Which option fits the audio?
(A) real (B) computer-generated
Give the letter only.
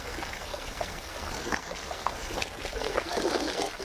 B